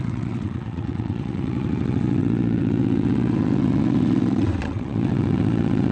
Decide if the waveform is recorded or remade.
remade